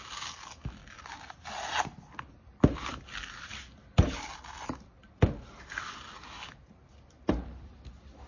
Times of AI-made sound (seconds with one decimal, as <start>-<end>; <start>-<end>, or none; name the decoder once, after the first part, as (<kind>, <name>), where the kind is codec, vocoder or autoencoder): none